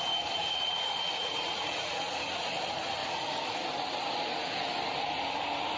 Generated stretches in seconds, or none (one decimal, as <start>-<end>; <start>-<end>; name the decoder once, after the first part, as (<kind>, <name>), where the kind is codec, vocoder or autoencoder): 0.4-2.6 (vocoder, Vocos)